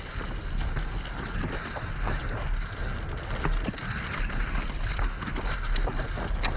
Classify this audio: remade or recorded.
recorded